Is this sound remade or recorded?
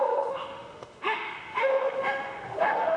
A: remade